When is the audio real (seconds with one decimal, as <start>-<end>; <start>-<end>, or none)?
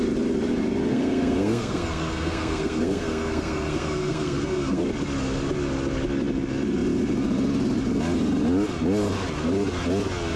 0.0-0.9; 4.8-10.4